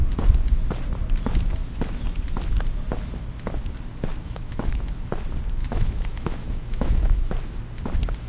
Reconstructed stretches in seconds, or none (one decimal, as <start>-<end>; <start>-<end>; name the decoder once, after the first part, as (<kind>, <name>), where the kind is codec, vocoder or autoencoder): 4.2-4.8 (autoencoder, DAC-VAE); 5.6-7.1